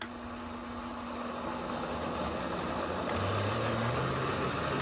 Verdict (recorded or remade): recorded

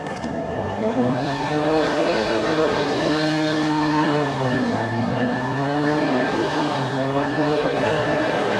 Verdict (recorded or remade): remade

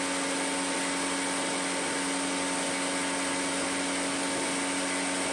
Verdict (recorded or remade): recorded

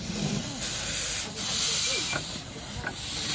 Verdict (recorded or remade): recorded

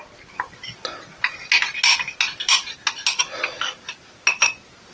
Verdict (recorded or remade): recorded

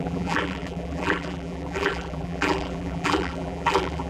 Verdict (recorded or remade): remade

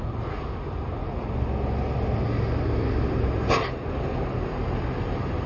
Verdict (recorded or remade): recorded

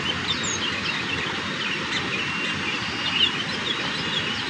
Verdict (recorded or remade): recorded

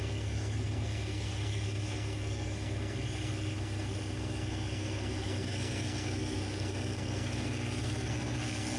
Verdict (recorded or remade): remade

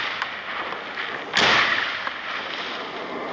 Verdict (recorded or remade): recorded